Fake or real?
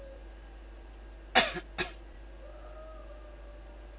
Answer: real